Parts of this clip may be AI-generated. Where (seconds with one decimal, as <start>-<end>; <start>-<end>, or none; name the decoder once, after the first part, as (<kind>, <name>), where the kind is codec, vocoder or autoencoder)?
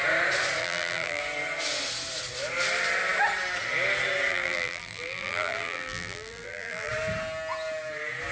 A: 0.6-1.2 (vocoder, BigVGAN v2); 4.3-6.9